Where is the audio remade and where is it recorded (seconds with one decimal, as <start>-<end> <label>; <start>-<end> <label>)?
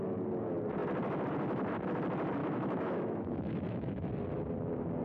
0.0-2.4 recorded; 2.4-4.1 remade; 4.1-5.0 recorded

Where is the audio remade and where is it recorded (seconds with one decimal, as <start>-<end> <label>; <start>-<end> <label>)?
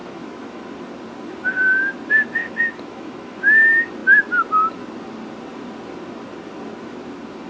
0.0-0.6 remade; 0.6-2.4 recorded; 2.4-3.4 remade; 3.4-7.5 recorded